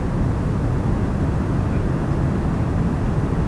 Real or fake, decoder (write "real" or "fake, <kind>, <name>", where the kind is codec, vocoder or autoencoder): real